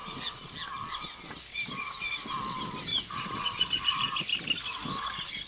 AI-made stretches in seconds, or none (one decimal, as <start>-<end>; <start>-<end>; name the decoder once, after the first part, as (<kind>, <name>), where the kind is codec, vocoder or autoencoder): 0.0-0.5 (vocoder, Vocos); 2.9-4.2